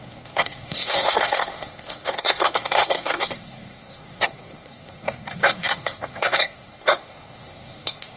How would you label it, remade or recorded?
remade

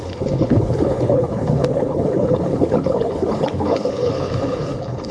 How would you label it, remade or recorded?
remade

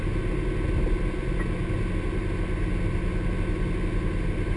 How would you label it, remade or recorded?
recorded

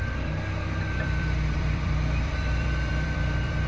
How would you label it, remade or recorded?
remade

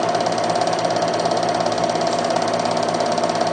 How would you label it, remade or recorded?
recorded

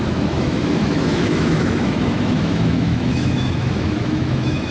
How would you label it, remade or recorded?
remade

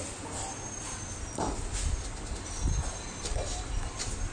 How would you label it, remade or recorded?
recorded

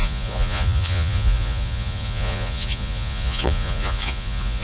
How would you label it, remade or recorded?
remade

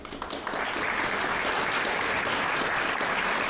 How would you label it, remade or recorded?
recorded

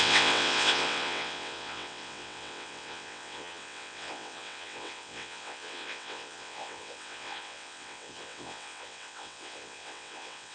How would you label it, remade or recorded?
remade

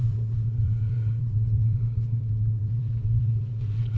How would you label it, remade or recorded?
remade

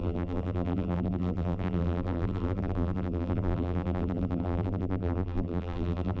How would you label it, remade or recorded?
remade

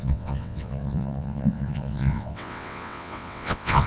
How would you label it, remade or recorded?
remade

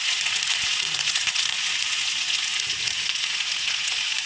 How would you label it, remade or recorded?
remade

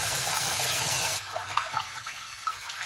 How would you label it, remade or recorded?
remade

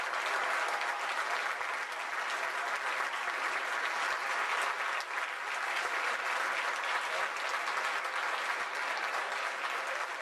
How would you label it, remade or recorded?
recorded